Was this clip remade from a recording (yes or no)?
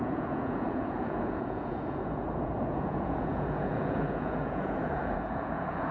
yes